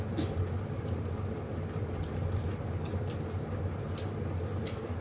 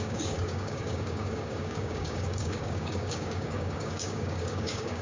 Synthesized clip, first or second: second